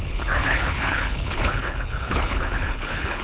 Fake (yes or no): yes